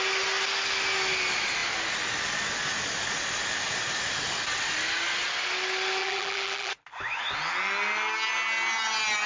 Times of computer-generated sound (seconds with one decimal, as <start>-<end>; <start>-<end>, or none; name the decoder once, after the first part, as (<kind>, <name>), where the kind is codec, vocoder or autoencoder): 6.0-6.7 (vocoder, BigVGAN v2)